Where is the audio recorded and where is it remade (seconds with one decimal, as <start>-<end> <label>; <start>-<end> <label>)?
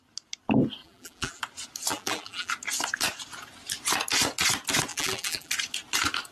0.0-0.8 recorded; 0.8-1.4 remade; 1.4-1.9 recorded; 1.9-2.5 remade; 2.5-4.9 recorded; 4.9-5.5 remade; 5.5-6.3 recorded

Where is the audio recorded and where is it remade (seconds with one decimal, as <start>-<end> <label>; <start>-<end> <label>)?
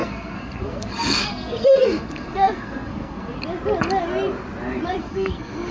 0.0-3.4 remade; 3.4-5.0 recorded; 5.0-5.7 remade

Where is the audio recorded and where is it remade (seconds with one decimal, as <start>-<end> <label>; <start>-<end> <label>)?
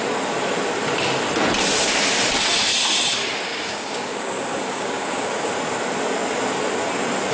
0.0-3.5 recorded; 3.5-5.5 remade; 5.5-7.3 recorded